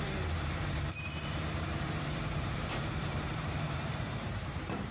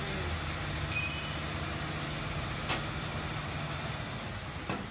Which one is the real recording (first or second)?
second